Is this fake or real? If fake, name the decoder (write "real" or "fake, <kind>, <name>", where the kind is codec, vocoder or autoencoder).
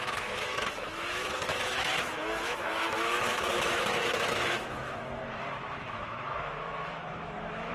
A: fake, autoencoder, DAC-VAE